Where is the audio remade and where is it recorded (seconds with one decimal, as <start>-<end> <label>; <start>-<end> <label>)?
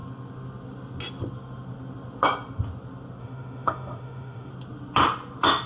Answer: 0.0-3.2 recorded; 3.2-4.5 remade; 4.5-5.7 recorded